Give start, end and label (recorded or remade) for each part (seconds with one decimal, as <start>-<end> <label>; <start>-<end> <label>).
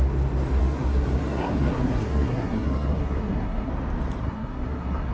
0.0-0.6 recorded; 0.6-3.7 remade; 3.7-4.2 recorded; 4.2-5.1 remade